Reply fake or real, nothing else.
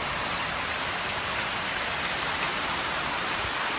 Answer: fake